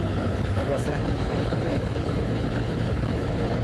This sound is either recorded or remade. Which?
remade